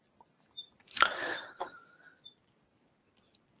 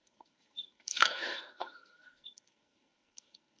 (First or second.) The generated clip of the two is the second